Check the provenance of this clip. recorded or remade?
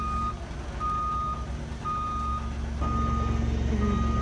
recorded